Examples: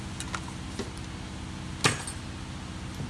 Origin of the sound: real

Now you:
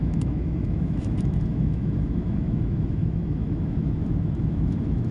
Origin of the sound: fake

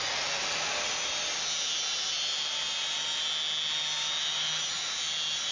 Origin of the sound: real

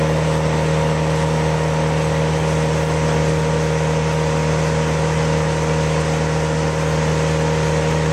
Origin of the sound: real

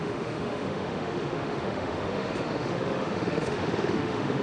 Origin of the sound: fake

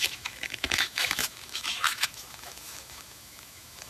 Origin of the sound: fake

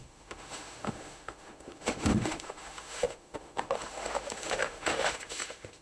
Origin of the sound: fake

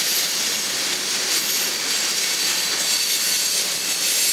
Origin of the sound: real